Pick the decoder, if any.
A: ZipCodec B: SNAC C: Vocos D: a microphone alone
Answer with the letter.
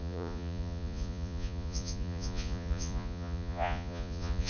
C